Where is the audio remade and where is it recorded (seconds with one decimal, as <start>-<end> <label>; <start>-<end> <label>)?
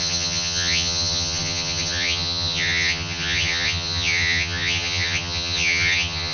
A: 0.0-6.3 remade